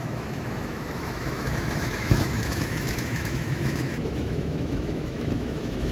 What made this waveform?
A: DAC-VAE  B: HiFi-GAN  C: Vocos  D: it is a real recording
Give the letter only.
A